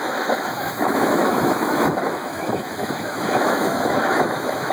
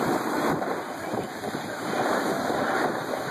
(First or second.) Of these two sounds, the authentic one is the second